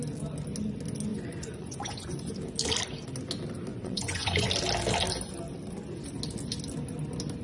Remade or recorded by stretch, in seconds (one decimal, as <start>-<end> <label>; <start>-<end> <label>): 0.0-1.1 recorded; 1.1-2.3 remade; 2.3-3.7 recorded; 3.7-4.5 remade; 4.5-7.4 recorded